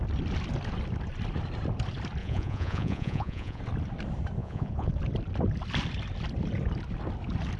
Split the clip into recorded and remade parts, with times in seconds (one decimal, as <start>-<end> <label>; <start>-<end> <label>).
0.0-2.2 recorded; 2.2-3.6 remade; 3.6-4.4 recorded; 4.4-4.9 remade; 4.9-7.6 recorded

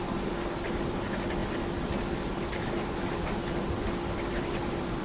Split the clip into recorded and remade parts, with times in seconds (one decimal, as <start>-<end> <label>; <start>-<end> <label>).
0.0-5.0 recorded

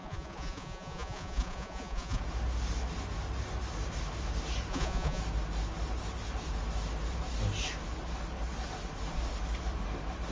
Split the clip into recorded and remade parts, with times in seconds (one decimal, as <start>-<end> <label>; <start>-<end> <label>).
0.0-2.2 remade; 2.2-4.7 recorded; 4.7-5.2 remade; 5.2-10.3 recorded

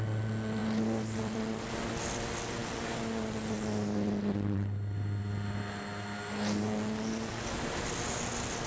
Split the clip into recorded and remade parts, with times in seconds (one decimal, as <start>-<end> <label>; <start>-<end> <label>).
0.0-8.7 recorded

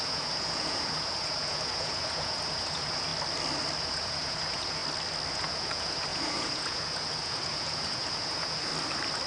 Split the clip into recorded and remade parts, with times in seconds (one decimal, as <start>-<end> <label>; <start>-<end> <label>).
0.0-3.1 remade; 3.1-3.8 recorded; 3.8-4.8 remade; 4.8-5.3 recorded; 5.3-8.7 remade; 8.7-9.3 recorded

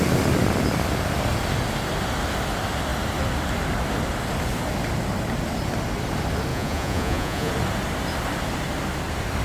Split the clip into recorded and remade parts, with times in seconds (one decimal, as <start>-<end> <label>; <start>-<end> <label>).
0.0-6.5 recorded; 6.5-7.5 remade; 7.5-9.4 recorded